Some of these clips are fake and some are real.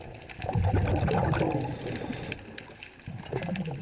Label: real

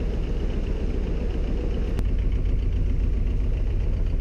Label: real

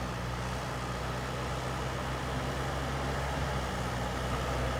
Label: real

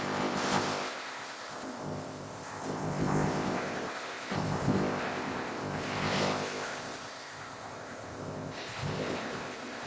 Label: fake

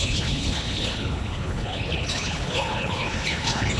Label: fake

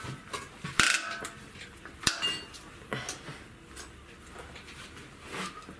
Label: real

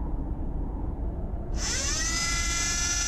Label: fake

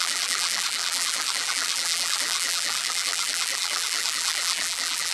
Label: fake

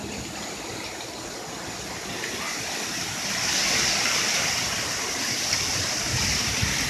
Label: real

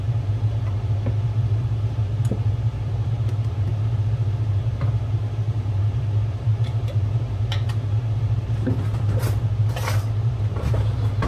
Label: fake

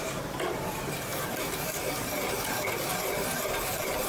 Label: fake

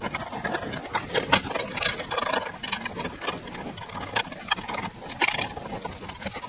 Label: real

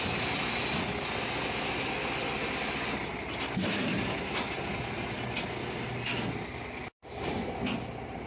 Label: real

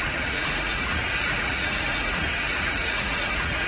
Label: fake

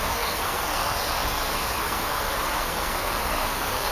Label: fake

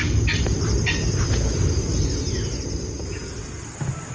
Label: real